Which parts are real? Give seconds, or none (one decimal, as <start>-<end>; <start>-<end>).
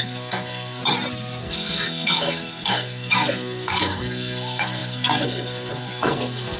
0.8-1.4